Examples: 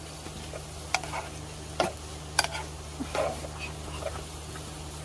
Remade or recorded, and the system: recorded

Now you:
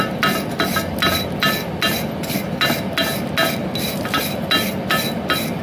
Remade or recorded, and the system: recorded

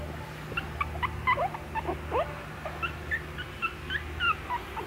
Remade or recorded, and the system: recorded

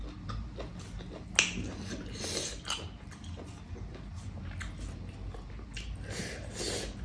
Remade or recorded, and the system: recorded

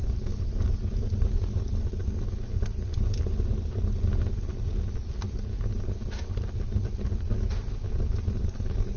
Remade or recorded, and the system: recorded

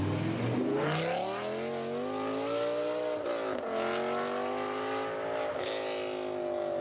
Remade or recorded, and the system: recorded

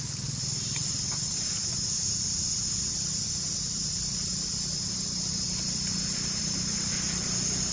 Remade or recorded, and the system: recorded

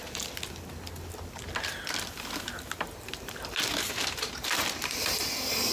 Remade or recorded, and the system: recorded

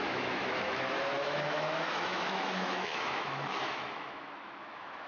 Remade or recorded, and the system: remade, autoencoder, DAC-VAE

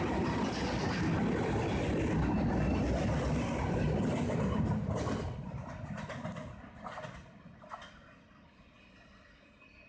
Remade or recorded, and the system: recorded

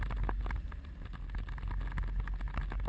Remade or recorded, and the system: recorded